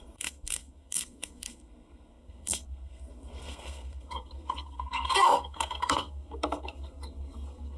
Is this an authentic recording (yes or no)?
no